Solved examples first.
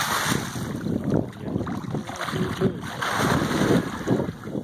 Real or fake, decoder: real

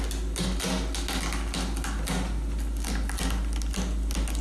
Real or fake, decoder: real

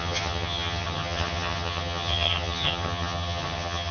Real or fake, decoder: fake, vocoder, HiFi-GAN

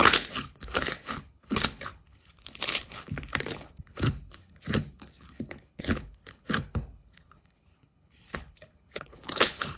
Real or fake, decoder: fake, codec, HILCodec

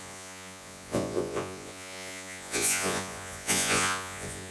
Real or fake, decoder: fake, vocoder, Vocos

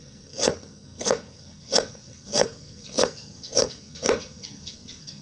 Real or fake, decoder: fake, codec, SNAC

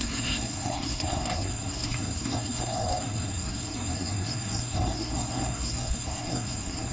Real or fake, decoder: fake, codec, SNAC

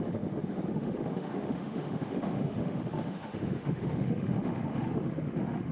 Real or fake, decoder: fake, autoencoder, DAC-VAE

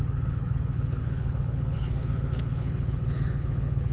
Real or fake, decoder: fake, codec, HILCodec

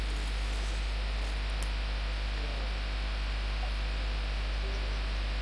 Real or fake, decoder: real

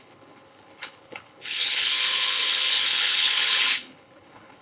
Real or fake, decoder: fake, codec, HILCodec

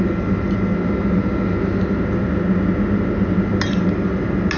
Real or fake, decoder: real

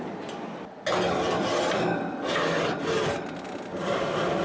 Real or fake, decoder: real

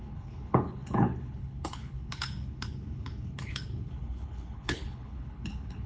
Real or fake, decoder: fake, codec, HILCodec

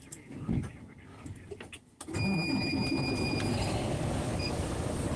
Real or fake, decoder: fake, vocoder, BigVGAN v2